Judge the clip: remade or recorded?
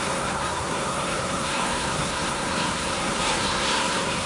remade